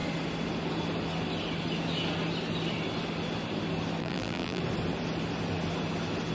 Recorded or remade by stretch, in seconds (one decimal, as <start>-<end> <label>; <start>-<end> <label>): 0.0-4.0 recorded; 4.0-4.6 remade; 4.6-6.3 recorded